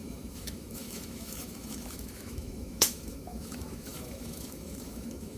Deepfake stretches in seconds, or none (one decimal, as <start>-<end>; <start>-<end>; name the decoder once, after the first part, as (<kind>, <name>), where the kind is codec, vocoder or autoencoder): 0.0-5.4 (autoencoder, DAC-VAE)